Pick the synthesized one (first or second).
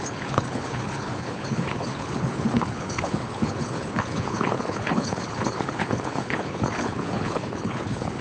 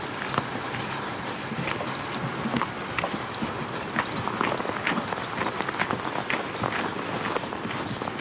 first